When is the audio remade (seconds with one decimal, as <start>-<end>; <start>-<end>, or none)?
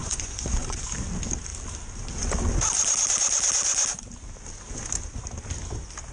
0.0-0.9